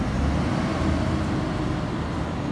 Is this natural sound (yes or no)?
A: yes